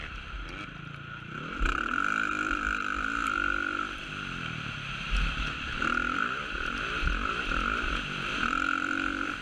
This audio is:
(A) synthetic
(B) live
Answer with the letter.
A